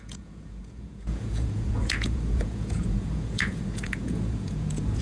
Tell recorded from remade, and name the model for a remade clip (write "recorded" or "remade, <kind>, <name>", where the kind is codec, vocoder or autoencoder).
remade, vocoder, Vocos